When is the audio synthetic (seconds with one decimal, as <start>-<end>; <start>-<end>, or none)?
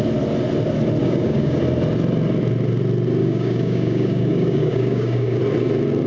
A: 1.0-1.6; 3.2-5.4